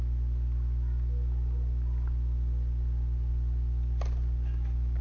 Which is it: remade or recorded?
recorded